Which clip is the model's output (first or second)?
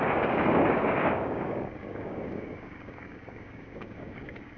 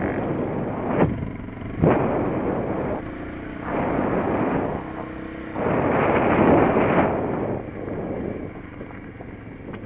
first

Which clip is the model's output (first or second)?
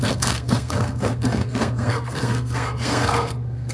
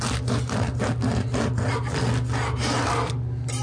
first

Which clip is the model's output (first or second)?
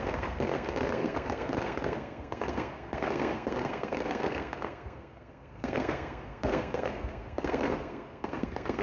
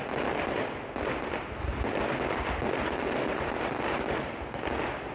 first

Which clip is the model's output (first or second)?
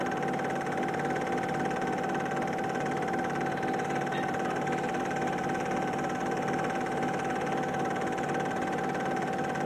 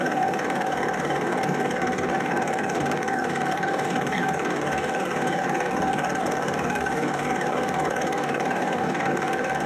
second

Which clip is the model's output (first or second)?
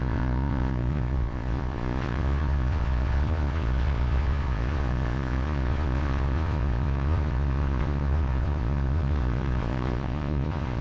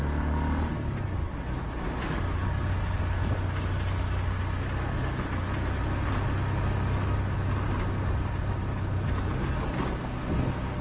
first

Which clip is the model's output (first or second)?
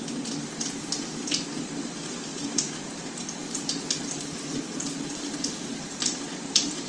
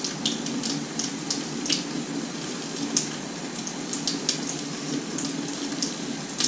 first